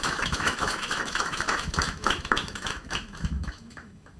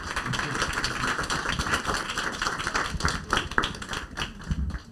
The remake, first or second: first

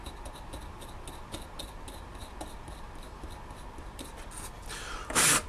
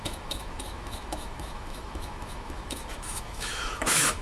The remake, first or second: second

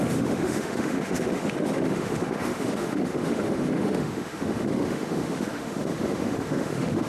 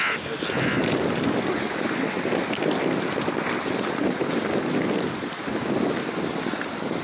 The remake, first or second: first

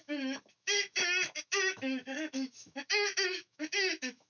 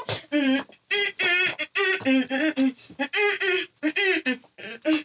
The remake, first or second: first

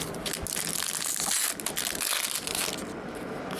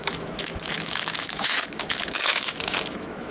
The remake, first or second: second